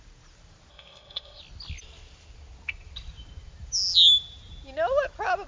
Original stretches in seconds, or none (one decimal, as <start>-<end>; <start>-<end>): 0.0-0.7; 1.4-5.5